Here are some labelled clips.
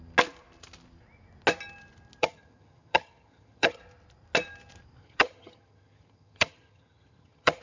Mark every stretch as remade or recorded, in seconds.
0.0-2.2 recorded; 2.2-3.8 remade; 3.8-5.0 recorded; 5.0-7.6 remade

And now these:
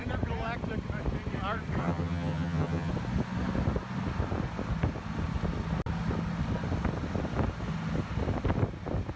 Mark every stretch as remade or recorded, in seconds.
0.0-1.8 recorded; 1.8-2.9 remade; 2.9-9.2 recorded

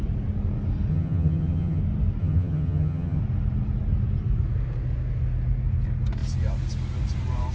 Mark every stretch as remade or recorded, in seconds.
0.0-0.9 recorded; 0.9-1.8 remade; 1.8-2.2 recorded; 2.2-3.2 remade; 3.2-7.5 recorded

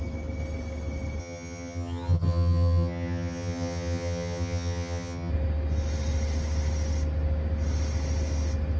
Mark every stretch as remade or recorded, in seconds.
0.0-1.2 recorded; 1.2-5.3 remade; 5.3-8.8 recorded